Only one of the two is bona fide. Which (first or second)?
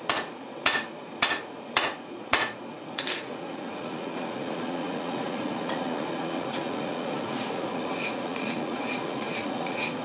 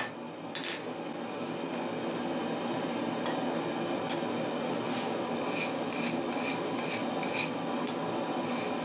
second